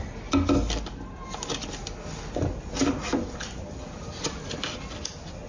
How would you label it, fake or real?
real